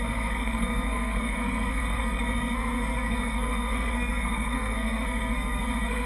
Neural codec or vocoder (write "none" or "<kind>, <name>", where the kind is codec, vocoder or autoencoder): codec, SNAC